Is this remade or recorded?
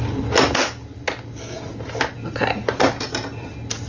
recorded